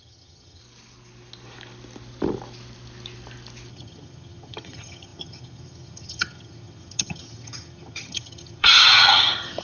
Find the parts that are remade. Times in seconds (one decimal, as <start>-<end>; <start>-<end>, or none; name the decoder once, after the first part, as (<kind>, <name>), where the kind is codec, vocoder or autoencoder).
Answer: 0.0-0.6 (vocoder, HiFi-GAN); 3.7-9.6